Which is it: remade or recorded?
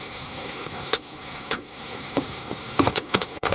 remade